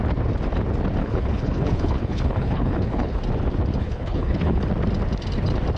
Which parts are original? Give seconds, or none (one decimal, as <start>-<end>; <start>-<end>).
0.0-1.0; 3.2-3.8; 4.6-5.8